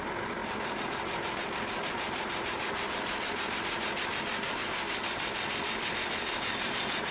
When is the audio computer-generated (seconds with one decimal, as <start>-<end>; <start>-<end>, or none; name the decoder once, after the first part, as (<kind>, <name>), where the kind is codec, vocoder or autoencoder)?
0.0-7.1 (vocoder, BigVGAN v2)